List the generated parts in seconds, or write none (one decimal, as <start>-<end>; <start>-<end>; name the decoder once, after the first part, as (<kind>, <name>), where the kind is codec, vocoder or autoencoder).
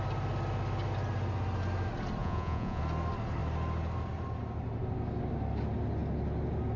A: 2.2-2.8 (vocoder, Vocos)